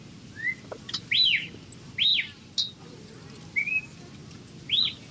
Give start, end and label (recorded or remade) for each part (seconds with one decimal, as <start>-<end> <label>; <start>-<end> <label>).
0.0-5.1 recorded